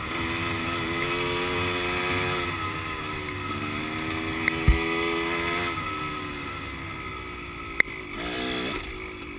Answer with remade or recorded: recorded